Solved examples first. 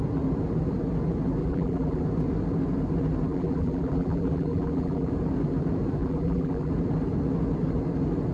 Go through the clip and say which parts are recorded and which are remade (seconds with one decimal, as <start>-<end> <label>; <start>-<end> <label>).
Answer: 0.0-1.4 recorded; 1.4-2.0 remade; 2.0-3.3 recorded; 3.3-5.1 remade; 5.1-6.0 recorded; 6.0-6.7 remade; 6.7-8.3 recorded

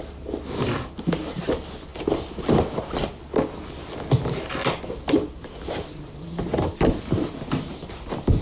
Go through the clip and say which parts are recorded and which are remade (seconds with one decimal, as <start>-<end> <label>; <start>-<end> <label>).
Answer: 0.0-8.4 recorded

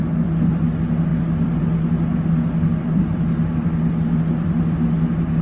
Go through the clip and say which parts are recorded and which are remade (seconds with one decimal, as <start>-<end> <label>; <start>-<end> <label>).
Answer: 0.0-1.1 recorded; 1.1-1.6 remade; 1.6-5.4 recorded